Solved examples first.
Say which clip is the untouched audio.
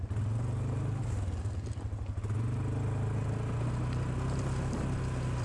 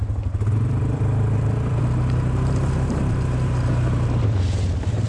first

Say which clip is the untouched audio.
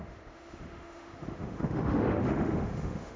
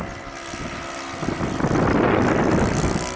second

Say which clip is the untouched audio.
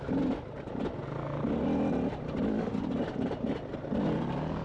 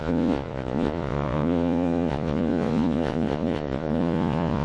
first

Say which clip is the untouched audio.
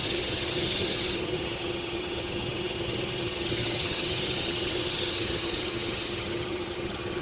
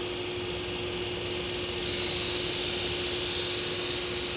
second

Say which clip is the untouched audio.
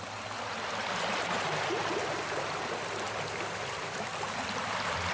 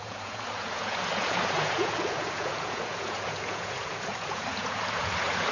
first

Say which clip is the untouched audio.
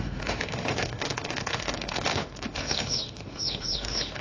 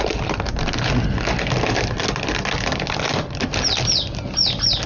second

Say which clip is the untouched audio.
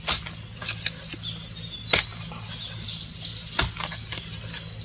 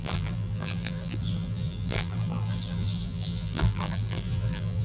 first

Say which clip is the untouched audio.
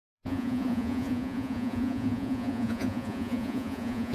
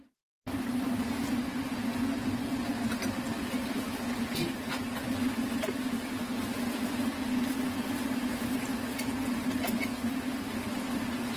second